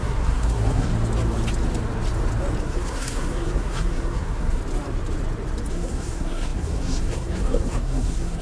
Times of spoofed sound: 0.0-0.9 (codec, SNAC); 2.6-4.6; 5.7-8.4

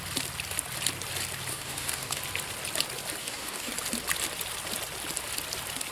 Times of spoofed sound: 1.5-2.2 (codec, DAC); 3.2-3.7

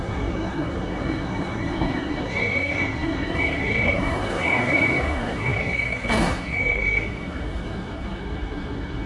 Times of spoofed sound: 0.0-9.1 (codec, SNAC)

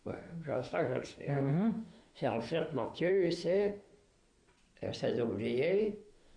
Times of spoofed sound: 0.0-3.9 (autoencoder, DAC-VAE); 5.8-6.4

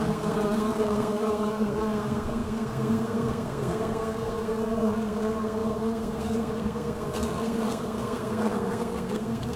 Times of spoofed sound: 0.0-9.6 (codec, SNAC)

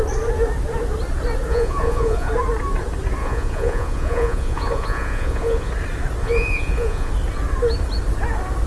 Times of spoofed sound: 1.5-2.3 (vocoder, Vocos); 3.2-5.7; 6.2-7.1

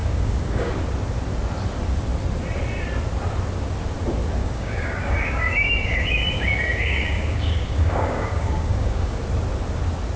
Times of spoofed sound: 0.0-0.7 (codec, DAC); 4.4-9.2

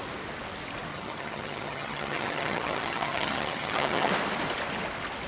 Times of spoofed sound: 0.9-4.1 (vocoder, HiFi-GAN)